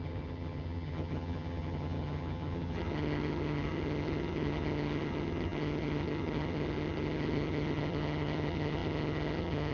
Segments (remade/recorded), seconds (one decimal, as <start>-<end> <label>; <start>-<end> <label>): 0.0-9.7 remade